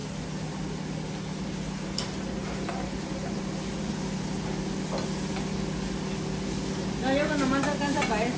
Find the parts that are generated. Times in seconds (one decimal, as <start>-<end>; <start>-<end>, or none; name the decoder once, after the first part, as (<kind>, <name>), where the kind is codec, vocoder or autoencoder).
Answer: none